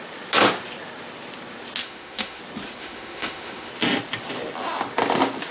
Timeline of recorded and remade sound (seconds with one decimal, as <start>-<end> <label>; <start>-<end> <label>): 0.0-1.8 recorded; 1.8-2.4 remade; 2.4-2.8 recorded; 2.8-3.7 remade; 3.7-5.5 recorded